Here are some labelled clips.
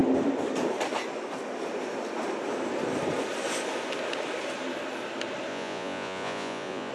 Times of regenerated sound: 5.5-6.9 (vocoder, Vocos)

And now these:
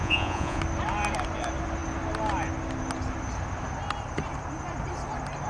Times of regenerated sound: 0.0-0.6 (vocoder, Vocos)

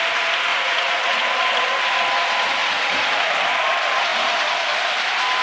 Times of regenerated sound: 0.5-1.2 (vocoder, Vocos); 2.6-3.2

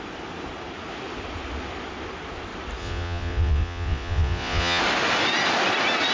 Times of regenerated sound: 2.8-4.8 (vocoder, Vocos)